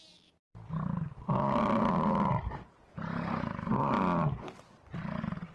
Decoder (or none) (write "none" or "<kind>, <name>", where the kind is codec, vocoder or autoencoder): none